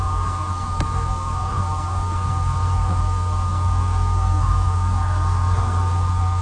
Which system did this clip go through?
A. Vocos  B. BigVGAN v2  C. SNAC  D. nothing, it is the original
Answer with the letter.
C